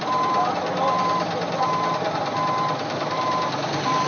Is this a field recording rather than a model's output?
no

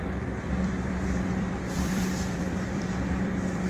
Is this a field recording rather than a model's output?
no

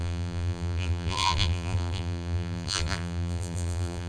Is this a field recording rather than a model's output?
no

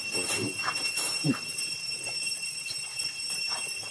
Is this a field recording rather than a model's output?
no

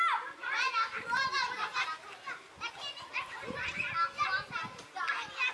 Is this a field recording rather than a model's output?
yes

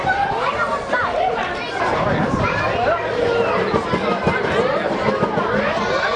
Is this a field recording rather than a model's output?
yes